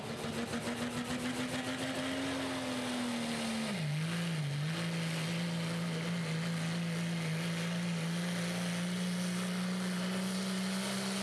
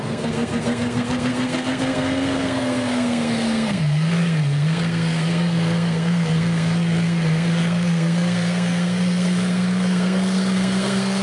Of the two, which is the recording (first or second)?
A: first